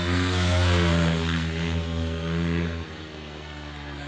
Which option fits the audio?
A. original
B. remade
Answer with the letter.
B